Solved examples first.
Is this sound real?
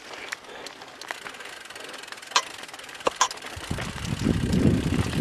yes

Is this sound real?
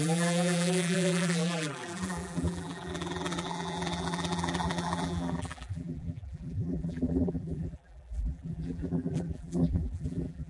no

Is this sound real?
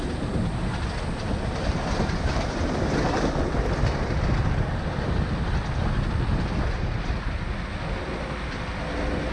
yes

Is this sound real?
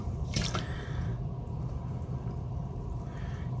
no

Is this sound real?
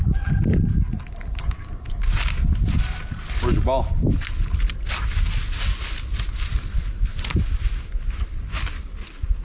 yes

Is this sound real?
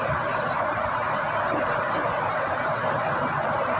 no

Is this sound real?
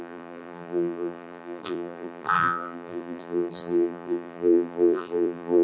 no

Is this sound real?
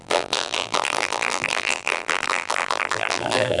no